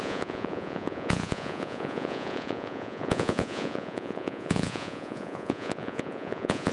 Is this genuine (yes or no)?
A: no